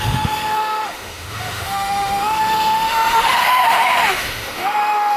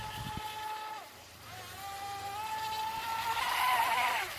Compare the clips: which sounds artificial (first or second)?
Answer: first